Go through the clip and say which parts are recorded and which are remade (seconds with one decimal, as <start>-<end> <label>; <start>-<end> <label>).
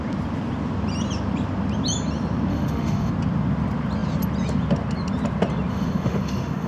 0.0-2.5 recorded; 2.5-3.1 remade; 3.1-5.7 recorded; 5.7-6.7 remade